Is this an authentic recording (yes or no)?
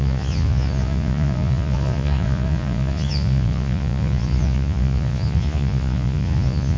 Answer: no